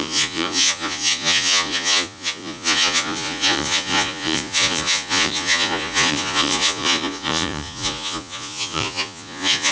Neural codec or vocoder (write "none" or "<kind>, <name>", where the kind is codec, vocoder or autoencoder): vocoder, Vocos